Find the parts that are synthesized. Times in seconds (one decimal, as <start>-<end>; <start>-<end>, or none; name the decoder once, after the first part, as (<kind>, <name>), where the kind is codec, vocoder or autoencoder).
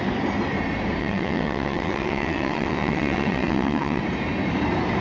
1.0-4.0 (vocoder, WaveNeXt)